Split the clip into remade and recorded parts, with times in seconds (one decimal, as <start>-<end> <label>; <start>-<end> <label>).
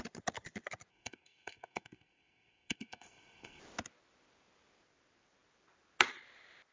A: 0.0-0.9 recorded; 0.9-3.6 remade; 3.6-6.7 recorded